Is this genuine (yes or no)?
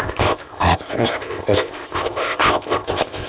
no